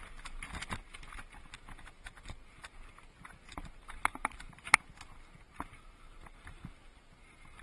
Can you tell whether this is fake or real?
real